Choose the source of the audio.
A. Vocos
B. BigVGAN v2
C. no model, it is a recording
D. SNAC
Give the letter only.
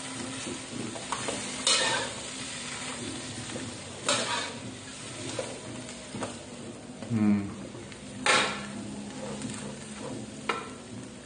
C